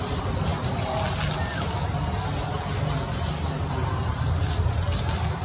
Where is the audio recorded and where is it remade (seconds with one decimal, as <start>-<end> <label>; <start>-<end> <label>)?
0.0-5.4 recorded